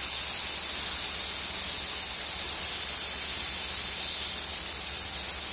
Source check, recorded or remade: recorded